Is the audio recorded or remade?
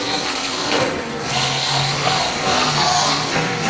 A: remade